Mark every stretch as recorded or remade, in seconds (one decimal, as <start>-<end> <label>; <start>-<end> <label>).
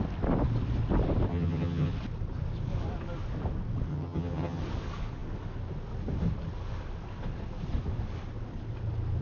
0.0-1.3 recorded; 1.3-1.9 remade; 1.9-3.9 recorded; 3.9-4.6 remade; 4.6-9.2 recorded